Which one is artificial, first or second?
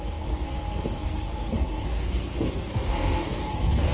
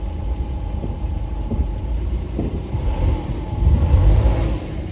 first